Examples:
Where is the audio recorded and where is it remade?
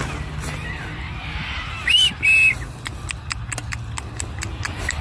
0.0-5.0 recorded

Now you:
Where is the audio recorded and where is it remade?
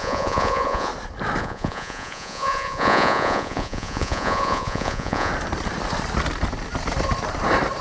0.0-0.9 remade; 0.9-1.4 recorded; 1.4-5.3 remade; 5.3-7.8 recorded